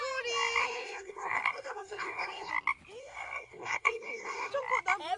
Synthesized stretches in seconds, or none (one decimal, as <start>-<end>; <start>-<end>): 0.6-2.5; 3.0-4.5